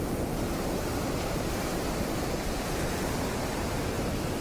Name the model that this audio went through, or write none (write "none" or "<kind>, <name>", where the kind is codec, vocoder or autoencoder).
vocoder, BigVGAN v2